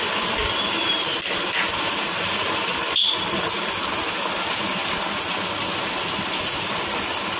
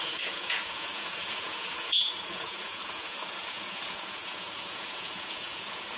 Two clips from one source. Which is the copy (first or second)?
second